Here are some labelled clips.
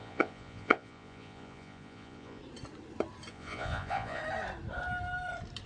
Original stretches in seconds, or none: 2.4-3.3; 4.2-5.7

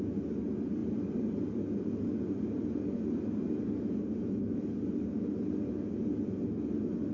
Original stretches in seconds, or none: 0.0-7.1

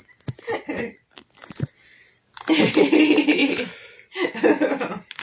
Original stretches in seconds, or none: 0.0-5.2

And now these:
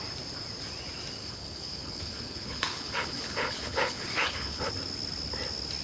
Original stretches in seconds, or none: 0.0-1.2; 4.7-5.8

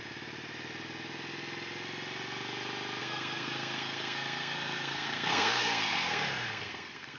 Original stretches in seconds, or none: 0.0-3.0